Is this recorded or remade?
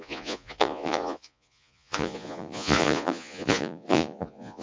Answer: remade